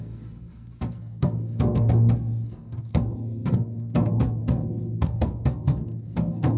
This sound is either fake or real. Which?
fake